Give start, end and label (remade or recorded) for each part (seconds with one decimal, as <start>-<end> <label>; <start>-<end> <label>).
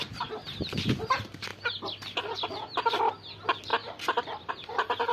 0.0-5.1 recorded